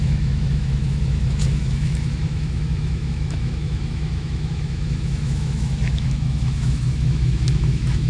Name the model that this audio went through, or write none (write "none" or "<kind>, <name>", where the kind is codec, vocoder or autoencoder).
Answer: autoencoder, DAC-VAE